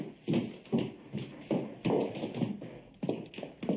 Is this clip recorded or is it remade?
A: recorded